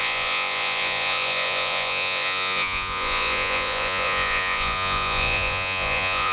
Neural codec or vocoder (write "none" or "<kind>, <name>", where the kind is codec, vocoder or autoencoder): vocoder, Vocos